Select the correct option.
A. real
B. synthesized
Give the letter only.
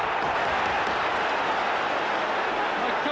A